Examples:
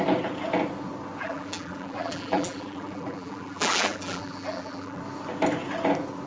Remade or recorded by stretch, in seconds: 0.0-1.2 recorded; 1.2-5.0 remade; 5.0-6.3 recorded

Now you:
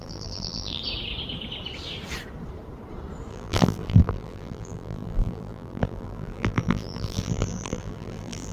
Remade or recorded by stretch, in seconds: 0.0-0.8 remade; 0.8-3.3 recorded; 3.3-8.5 remade

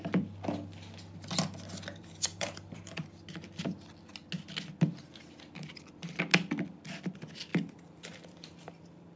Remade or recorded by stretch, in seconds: 0.0-2.0 recorded; 2.0-3.0 remade; 3.0-7.5 recorded; 7.5-9.2 remade

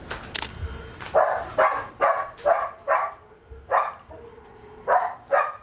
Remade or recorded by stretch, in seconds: 0.0-5.6 recorded

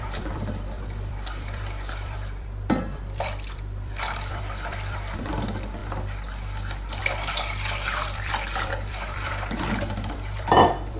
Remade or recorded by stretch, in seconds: 0.0-11.0 remade

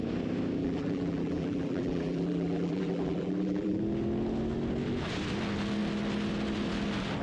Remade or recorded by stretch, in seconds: 0.0-0.6 recorded; 0.6-3.8 remade; 3.8-7.2 recorded